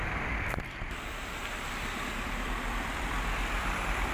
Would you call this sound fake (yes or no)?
yes